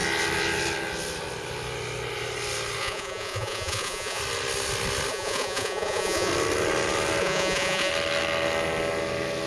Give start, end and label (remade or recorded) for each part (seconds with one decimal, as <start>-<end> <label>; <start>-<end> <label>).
0.0-2.8 recorded; 2.8-4.2 remade; 4.2-5.1 recorded; 5.1-6.3 remade; 6.3-7.2 recorded; 7.2-7.9 remade; 7.9-9.5 recorded